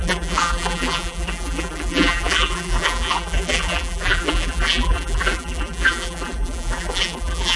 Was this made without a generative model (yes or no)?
no